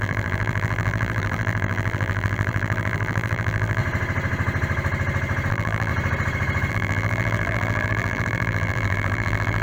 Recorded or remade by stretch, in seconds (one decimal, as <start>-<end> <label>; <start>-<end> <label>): 0.0-3.8 remade; 3.8-5.5 recorded; 5.5-5.9 remade; 5.9-6.7 recorded; 6.7-9.6 remade